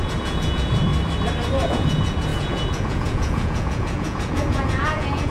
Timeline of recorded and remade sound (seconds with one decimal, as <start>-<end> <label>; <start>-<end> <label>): 0.0-0.9 remade; 0.9-1.7 recorded; 1.7-5.3 remade